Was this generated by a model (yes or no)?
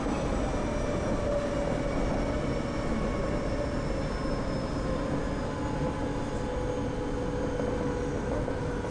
no